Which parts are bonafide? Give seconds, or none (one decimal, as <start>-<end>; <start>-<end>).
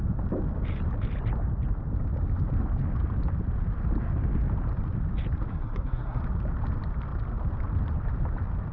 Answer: 0.0-5.5; 6.2-8.7